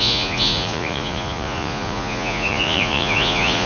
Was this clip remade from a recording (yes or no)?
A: yes